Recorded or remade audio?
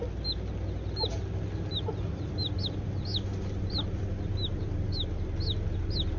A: recorded